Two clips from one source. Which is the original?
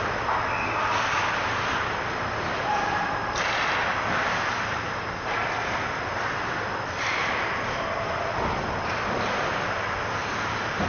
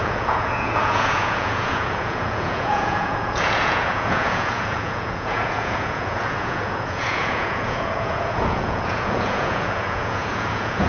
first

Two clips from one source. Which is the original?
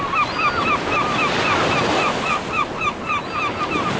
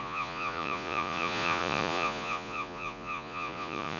first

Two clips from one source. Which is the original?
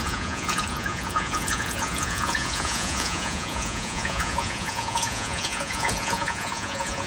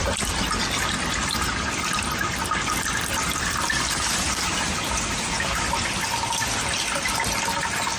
second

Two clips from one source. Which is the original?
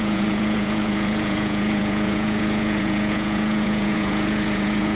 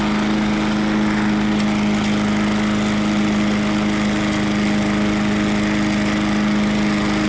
second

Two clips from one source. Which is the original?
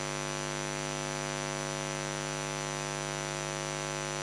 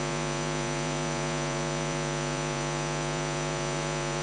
first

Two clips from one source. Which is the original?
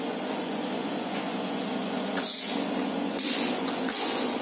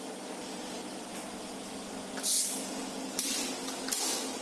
second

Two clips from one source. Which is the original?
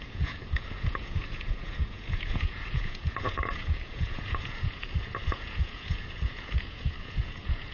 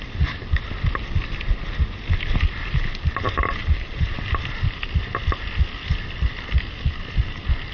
second